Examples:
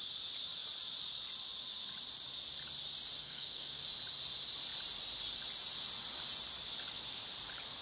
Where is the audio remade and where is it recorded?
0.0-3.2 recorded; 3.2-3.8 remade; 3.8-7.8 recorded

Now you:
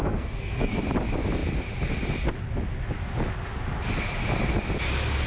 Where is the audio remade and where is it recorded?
0.0-0.8 remade; 0.8-5.3 recorded

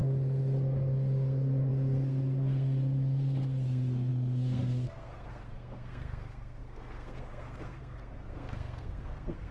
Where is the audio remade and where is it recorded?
0.0-9.5 remade

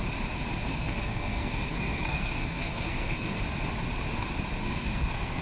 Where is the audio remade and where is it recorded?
0.0-0.7 recorded; 0.7-3.4 remade; 3.4-4.6 recorded; 4.6-5.4 remade

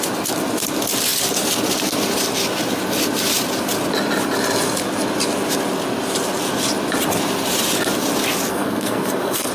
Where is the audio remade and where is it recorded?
0.0-8.5 recorded; 8.5-9.5 remade

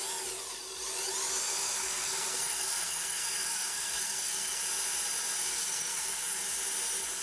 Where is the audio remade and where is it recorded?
0.0-1.5 recorded; 1.5-4.6 remade; 4.6-5.4 recorded; 5.4-6.4 remade; 6.4-7.2 recorded

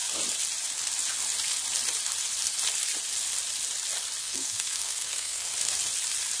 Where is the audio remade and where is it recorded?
0.0-4.2 recorded; 4.2-5.5 remade; 5.5-6.4 recorded

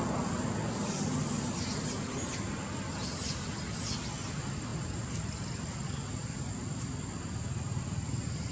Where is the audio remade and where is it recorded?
0.0-8.5 recorded